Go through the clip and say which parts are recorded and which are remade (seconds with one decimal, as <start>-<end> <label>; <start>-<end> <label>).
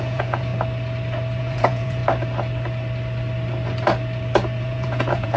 0.0-0.5 remade; 0.5-1.4 recorded; 1.4-2.0 remade; 2.0-4.6 recorded; 4.6-5.4 remade